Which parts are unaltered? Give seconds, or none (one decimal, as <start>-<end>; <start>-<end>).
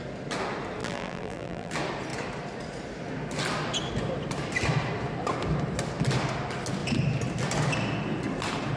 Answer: 0.0-0.8; 1.7-8.8